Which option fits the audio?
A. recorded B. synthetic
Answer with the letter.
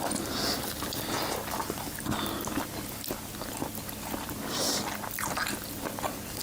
A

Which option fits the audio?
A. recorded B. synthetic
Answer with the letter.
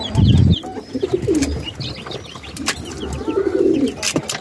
A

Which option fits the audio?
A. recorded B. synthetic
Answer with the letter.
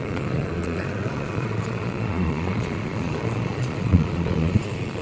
B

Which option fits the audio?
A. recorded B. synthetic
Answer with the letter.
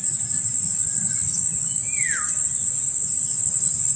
A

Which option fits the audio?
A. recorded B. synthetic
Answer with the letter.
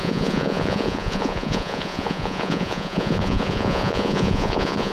B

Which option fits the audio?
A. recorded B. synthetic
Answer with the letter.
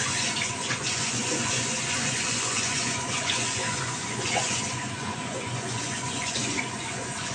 B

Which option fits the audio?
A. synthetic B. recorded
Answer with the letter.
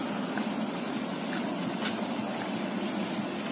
B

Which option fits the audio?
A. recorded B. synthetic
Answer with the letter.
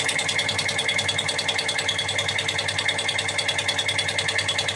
A